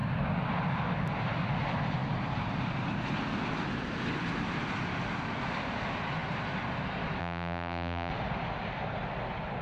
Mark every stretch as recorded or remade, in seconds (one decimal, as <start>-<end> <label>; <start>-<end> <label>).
0.0-7.2 recorded; 7.2-8.1 remade; 8.1-9.6 recorded